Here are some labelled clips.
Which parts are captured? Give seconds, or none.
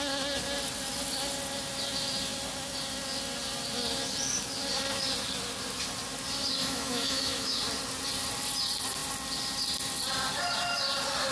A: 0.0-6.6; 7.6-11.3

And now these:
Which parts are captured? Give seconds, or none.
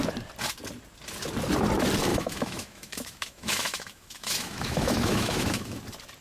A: 0.0-2.1; 5.8-6.2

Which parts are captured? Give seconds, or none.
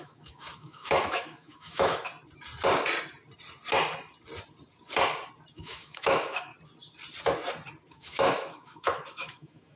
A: 2.1-5.5; 6.5-7.9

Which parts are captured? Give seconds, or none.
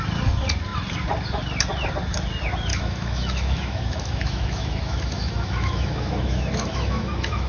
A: 0.0-2.7